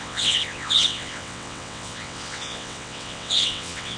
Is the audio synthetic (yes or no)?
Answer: yes